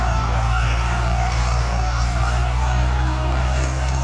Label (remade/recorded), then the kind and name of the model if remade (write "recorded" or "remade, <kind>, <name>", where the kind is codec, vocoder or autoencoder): remade, codec, DAC